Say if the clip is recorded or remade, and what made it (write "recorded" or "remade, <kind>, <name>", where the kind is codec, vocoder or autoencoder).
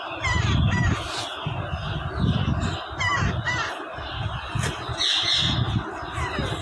recorded